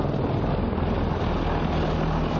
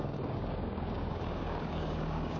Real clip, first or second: first